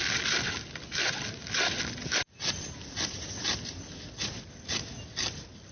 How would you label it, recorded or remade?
recorded